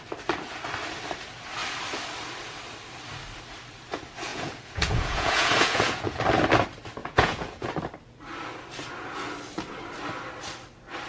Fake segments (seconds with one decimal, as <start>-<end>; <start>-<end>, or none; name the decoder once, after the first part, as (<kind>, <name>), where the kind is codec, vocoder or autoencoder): 4.3-6.2 (vocoder, Vocos); 7.0-7.7